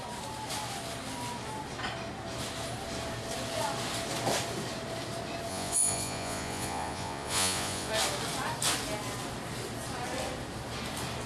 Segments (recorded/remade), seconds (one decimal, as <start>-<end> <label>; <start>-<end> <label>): 0.0-5.5 recorded; 5.5-7.9 remade; 7.9-11.3 recorded